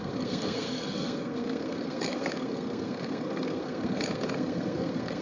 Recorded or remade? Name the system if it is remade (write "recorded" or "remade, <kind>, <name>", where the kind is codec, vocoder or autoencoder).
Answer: remade, codec, SNAC